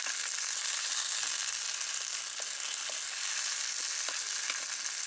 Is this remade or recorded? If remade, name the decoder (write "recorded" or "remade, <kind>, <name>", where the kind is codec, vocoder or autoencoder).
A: recorded